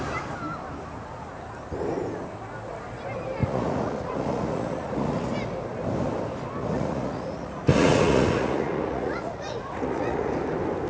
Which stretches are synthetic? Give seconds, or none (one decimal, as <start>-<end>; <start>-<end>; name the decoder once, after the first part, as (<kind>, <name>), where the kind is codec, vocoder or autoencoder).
3.4-5.3 (vocoder, Vocos); 6.6-10.3